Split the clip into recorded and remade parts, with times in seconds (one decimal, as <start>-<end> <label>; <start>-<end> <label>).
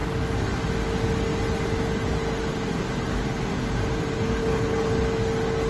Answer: 0.0-4.4 recorded; 4.4-4.9 remade; 4.9-5.7 recorded